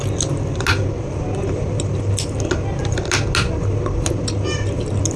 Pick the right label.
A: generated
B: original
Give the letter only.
B